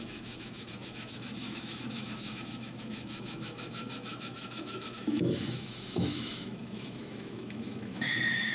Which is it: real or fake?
fake